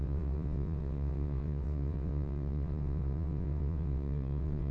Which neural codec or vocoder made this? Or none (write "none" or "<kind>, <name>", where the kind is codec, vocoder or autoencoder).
vocoder, WaveNeXt